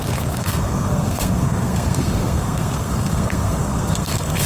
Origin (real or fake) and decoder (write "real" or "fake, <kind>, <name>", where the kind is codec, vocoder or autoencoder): fake, codec, SNAC